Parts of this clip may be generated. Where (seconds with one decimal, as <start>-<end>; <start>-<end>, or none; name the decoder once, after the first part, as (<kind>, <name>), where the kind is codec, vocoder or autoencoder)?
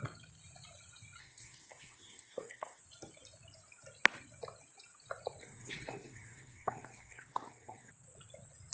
1.2-2.8 (codec, SNAC); 5.4-7.9